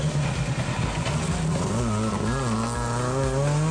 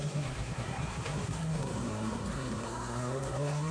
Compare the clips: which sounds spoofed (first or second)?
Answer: second